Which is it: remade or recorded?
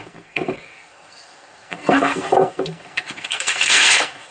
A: remade